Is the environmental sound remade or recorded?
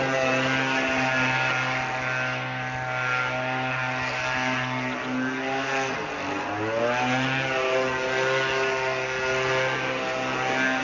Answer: recorded